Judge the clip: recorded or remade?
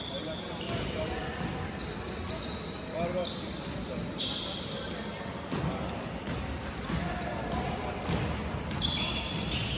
recorded